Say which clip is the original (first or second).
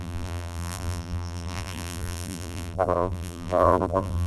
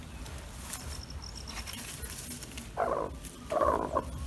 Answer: second